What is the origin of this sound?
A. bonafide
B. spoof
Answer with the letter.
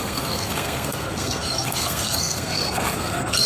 B